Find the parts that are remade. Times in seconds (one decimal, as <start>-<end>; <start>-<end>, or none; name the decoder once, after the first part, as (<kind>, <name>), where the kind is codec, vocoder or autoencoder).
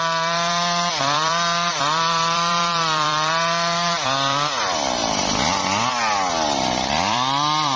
0.0-5.0 (vocoder, BigVGAN v2); 6.3-7.8